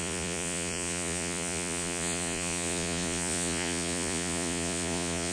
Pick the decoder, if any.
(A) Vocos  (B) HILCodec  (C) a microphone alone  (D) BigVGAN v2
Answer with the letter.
A